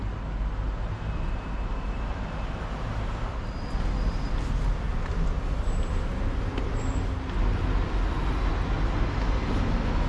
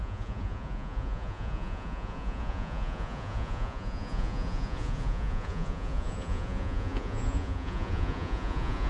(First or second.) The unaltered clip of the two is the first